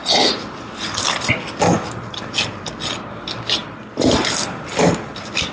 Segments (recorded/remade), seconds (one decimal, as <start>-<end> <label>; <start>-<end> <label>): 0.0-5.5 recorded